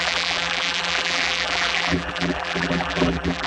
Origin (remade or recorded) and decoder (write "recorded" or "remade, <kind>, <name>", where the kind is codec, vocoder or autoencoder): remade, vocoder, BigVGAN v2